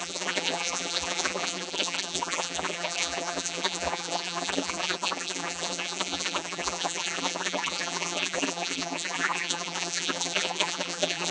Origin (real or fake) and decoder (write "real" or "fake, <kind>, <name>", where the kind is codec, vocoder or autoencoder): fake, vocoder, BigVGAN v2